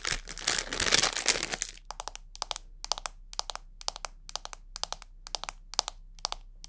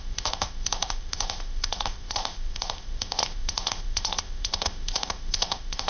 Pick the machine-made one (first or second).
second